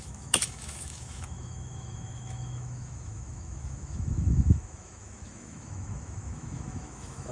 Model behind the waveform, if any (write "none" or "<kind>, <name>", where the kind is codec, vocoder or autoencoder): autoencoder, DAC-VAE